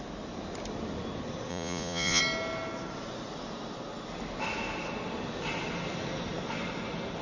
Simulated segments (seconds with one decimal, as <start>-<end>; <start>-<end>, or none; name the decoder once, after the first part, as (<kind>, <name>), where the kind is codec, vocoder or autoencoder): 1.5-2.2 (vocoder, Vocos)